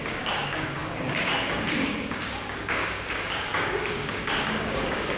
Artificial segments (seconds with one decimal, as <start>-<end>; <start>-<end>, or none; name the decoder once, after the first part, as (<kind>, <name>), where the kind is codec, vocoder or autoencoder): 0.0-5.2 (codec, DAC)